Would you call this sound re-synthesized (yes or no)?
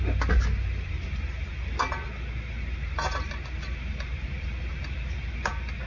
no